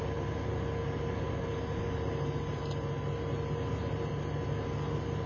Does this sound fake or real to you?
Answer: real